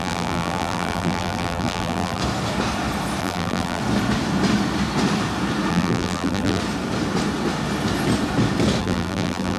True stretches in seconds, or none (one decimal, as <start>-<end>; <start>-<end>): 2.2-3.2; 3.8-5.7; 6.6-8.8